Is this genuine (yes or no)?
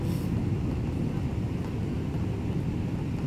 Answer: yes